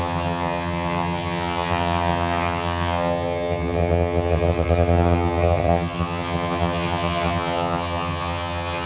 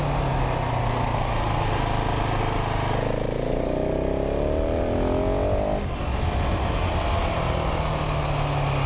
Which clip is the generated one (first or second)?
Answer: first